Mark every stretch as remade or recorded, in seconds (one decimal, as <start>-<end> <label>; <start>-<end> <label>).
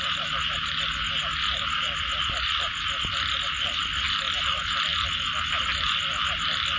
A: 0.0-6.8 recorded